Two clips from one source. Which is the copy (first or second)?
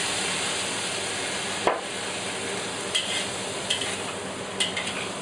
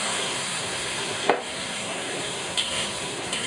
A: second